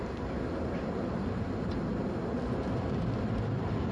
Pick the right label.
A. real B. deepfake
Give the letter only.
A